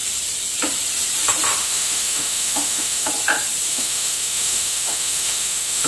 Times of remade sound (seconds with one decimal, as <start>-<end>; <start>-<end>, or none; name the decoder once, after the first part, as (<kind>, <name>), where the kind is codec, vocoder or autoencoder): 1.6-3.1 (autoencoder, DAC-VAE); 3.7-5.9